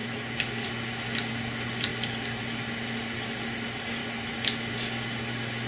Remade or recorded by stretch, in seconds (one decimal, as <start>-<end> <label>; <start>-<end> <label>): 0.0-5.7 recorded